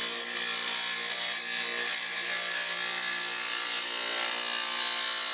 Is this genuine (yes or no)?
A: yes